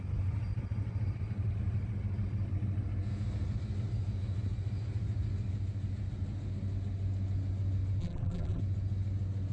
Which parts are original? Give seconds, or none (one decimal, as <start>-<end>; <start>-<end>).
0.0-8.0; 8.6-9.5